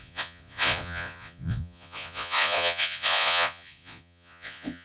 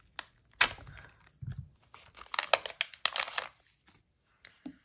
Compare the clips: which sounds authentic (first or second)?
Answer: second